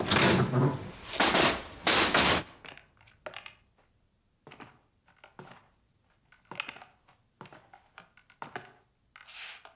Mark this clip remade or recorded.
recorded